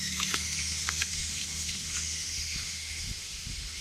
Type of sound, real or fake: fake